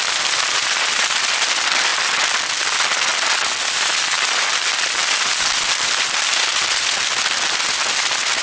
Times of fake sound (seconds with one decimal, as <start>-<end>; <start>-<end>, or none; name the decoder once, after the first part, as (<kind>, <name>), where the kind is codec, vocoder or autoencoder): none